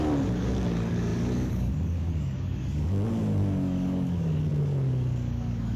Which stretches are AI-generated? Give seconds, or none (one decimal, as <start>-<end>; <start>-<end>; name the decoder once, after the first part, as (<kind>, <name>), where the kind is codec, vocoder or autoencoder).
0.0-5.8 (codec, DAC)